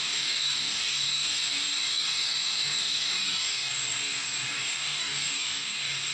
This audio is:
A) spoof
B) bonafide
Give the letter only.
A